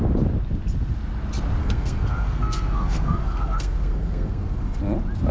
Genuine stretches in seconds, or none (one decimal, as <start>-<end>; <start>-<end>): 0.0-1.6; 4.8-5.3